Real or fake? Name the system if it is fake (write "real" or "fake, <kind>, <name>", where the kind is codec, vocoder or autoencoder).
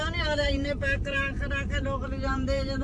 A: fake, vocoder, BigVGAN v2